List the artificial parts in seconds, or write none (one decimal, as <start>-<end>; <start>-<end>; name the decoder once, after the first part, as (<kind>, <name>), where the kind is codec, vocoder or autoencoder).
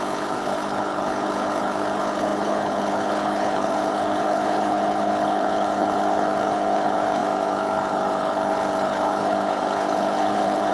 0.0-10.7 (codec, HILCodec)